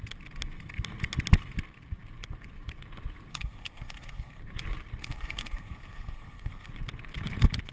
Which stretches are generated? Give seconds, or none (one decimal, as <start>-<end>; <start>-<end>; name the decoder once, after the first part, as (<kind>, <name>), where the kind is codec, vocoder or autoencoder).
3.3-4.4 (codec, SNAC); 5.0-6.7